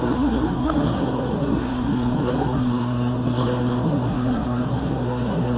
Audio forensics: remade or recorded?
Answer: remade